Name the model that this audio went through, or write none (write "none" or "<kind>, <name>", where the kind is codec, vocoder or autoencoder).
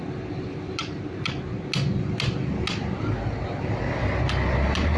none